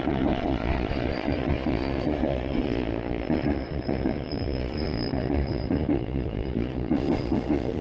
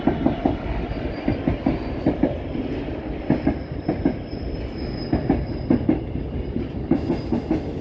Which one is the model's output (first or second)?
first